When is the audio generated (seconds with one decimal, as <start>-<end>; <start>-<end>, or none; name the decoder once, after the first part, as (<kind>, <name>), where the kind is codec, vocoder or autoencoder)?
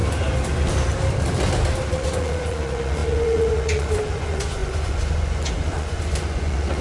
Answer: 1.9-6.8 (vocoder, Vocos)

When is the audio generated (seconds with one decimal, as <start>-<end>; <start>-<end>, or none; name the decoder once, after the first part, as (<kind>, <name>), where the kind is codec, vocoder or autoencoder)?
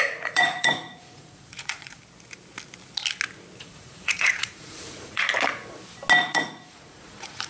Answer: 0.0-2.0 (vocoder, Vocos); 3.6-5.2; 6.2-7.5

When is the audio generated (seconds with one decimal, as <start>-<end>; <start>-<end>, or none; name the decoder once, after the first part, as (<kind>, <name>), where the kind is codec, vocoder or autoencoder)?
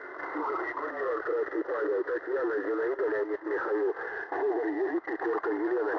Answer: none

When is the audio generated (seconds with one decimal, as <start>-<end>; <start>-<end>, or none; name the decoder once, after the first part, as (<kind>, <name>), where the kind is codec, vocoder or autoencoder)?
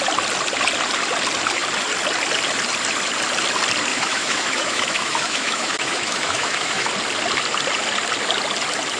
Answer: 3.9-6.9 (autoencoder, DAC-VAE)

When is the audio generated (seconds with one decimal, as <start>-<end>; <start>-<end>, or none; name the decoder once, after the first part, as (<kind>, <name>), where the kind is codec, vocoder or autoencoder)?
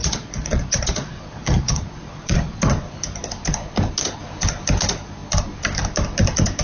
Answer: 0.0-2.6 (vocoder, Vocos)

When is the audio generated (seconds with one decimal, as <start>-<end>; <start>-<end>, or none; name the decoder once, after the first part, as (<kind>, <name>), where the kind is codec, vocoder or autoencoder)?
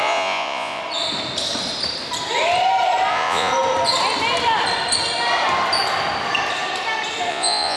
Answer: 0.0-0.8 (vocoder, Vocos); 3.1-3.5; 7.3-7.8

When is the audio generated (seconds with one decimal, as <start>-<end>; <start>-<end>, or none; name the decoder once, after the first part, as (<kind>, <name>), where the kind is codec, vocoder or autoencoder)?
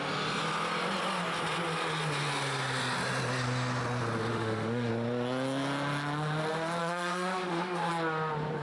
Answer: 4.3-4.9 (autoencoder, DAC-VAE); 6.8-7.9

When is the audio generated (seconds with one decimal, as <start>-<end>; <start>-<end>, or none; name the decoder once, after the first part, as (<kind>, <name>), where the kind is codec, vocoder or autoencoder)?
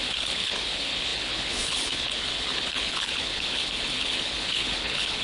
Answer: 0.0-5.2 (codec, HILCodec)